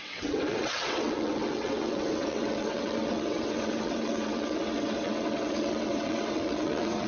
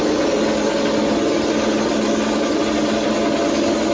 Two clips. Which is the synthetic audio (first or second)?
first